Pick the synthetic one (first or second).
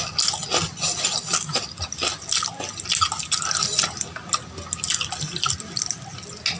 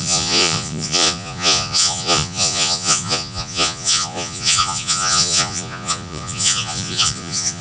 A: second